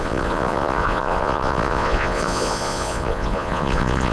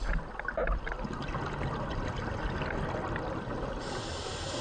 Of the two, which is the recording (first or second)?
second